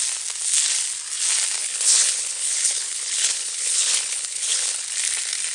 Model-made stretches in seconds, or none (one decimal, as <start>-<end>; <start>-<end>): 1.6-4.8